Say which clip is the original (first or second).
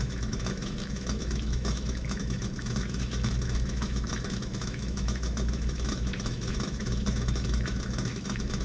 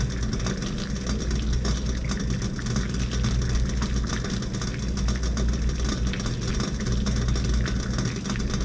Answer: second